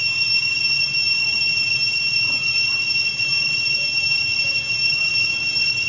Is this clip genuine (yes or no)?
yes